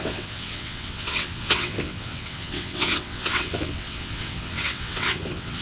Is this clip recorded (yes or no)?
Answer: no